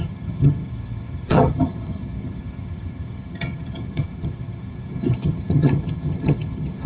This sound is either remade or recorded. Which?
remade